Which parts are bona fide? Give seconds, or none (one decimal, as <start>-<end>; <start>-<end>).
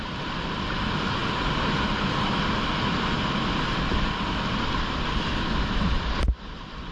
0.0-6.9